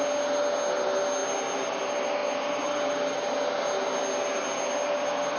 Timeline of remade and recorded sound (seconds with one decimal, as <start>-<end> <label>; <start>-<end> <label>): 0.0-5.4 recorded

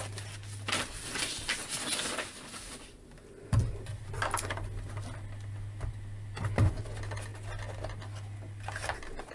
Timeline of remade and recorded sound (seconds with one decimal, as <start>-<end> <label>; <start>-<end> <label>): 0.0-9.3 recorded